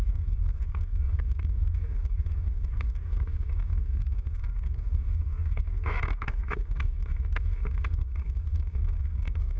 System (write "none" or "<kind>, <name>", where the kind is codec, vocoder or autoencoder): codec, DAC